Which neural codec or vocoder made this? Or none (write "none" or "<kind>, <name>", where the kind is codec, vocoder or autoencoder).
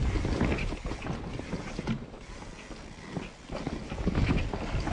none